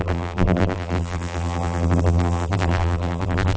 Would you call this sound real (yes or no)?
no